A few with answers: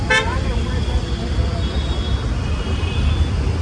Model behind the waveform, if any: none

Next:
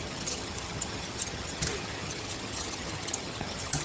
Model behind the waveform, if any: vocoder, HiFi-GAN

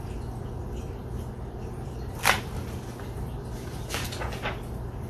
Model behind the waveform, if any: none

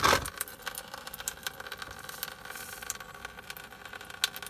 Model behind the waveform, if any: none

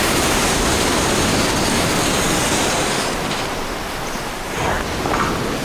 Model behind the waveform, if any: none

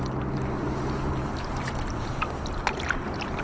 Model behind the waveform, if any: none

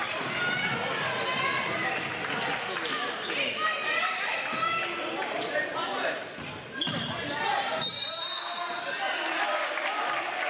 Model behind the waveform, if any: none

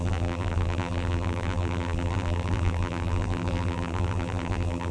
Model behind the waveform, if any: vocoder, BigVGAN v2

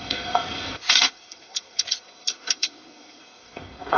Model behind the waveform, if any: codec, SNAC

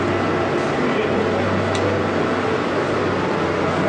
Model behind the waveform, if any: none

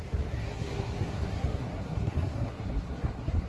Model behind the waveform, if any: codec, SNAC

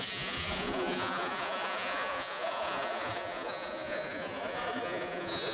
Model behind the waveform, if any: vocoder, Vocos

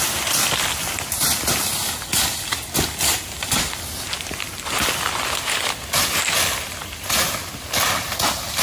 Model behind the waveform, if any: none